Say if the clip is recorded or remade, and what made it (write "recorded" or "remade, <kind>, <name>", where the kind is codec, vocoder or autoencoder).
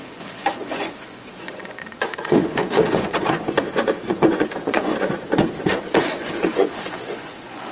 remade, vocoder, Vocos